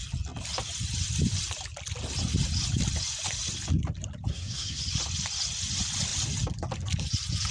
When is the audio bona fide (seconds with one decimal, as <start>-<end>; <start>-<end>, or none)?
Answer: 0.0-4.3; 4.8-7.5